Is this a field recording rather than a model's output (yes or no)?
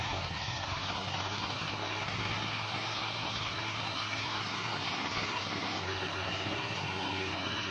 no